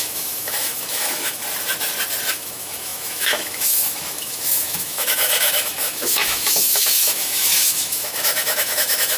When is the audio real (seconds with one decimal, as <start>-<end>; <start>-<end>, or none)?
1.4-2.3